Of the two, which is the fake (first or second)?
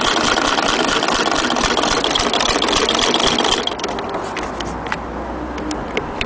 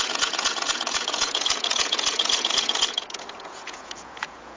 second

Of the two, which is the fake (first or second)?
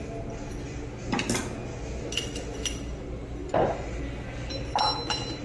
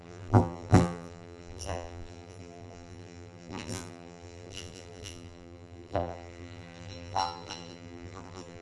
second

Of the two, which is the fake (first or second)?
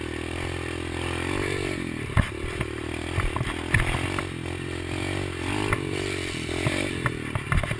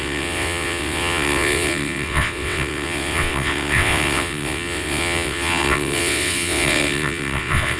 second